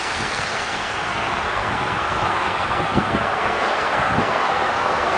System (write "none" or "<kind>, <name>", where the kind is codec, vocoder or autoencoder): codec, SNAC